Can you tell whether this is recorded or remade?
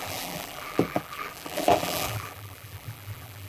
remade